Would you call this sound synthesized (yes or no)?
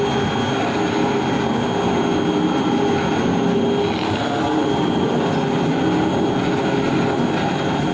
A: no